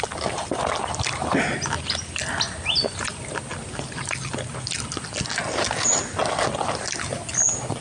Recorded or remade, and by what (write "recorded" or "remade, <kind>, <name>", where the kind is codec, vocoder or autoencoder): recorded